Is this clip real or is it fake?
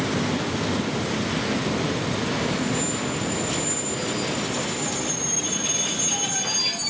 real